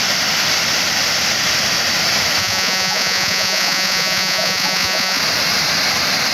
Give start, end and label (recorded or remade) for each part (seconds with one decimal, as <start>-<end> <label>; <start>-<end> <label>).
0.0-2.4 recorded; 2.4-5.2 remade; 5.2-6.3 recorded